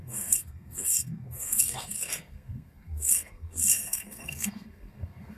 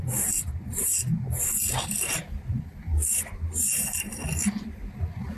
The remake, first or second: first